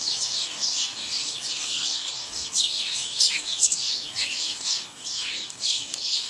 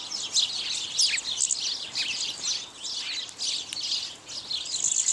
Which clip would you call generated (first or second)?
first